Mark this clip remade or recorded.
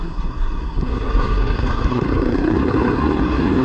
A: remade